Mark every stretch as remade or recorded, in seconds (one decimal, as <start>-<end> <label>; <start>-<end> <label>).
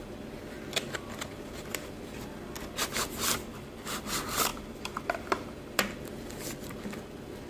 0.0-7.5 recorded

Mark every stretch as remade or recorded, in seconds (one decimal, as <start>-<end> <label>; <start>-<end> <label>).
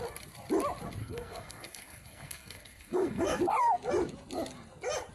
0.0-1.0 recorded; 1.0-3.4 remade; 3.4-5.1 recorded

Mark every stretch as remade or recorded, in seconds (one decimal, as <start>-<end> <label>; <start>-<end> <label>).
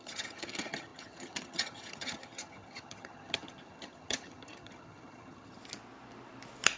0.0-5.6 remade; 5.6-6.8 recorded